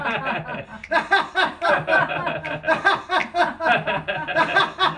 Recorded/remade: recorded